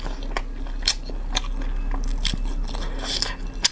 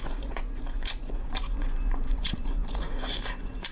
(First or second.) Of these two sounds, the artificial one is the second